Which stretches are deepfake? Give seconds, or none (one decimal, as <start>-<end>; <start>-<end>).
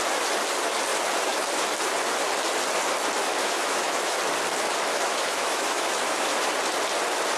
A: 3.4-4.2; 4.9-6.5